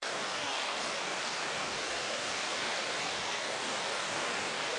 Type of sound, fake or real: fake